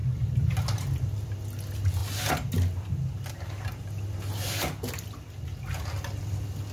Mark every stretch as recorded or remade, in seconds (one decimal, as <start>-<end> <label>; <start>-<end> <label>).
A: 0.0-6.7 recorded